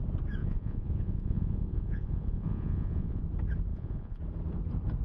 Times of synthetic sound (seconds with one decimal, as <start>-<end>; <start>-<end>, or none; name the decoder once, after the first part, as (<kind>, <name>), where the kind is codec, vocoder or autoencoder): 0.4-3.2 (vocoder, Vocos); 3.7-4.2